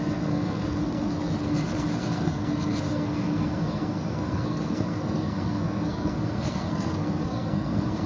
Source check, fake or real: fake